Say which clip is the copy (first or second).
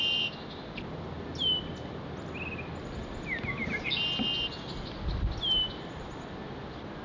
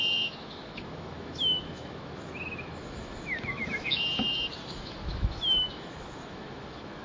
second